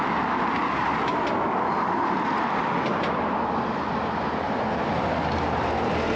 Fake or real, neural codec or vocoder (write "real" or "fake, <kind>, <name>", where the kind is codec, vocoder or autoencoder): real